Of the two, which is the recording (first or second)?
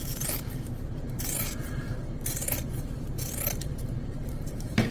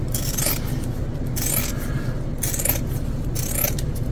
second